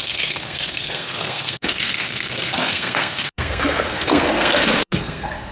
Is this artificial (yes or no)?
yes